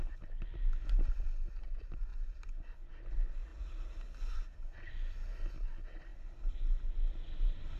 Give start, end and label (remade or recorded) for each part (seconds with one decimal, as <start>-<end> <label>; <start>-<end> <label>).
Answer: 0.0-7.8 recorded